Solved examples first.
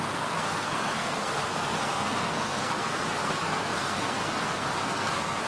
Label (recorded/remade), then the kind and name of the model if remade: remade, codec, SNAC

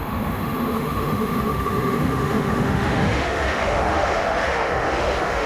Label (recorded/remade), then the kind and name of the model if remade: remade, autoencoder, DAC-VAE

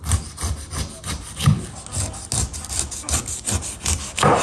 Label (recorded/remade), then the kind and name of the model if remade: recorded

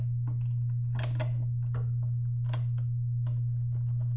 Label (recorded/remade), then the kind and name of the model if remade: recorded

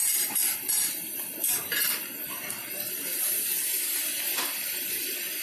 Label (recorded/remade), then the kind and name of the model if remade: recorded